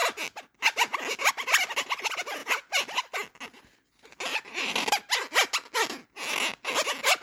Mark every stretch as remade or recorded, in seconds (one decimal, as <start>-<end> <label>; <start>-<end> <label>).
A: 0.0-4.3 recorded; 4.3-5.1 remade; 5.1-7.2 recorded